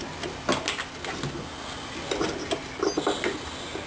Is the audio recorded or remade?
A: recorded